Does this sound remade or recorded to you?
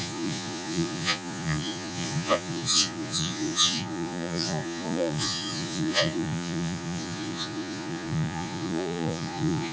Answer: remade